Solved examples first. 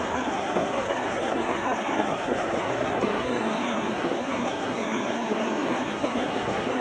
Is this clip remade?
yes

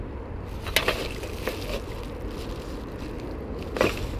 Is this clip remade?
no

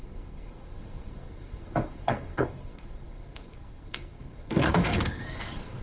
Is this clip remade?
yes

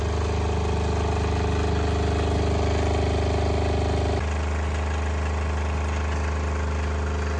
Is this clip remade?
no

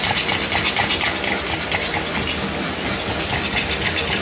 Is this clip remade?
no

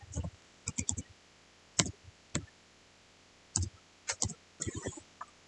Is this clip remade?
no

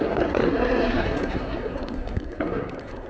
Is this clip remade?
yes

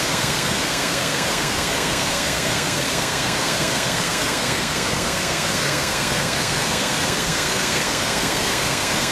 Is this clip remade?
yes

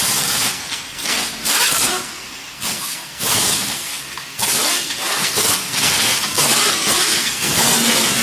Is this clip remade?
yes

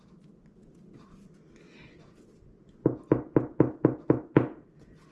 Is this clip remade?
no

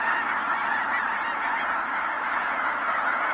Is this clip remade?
no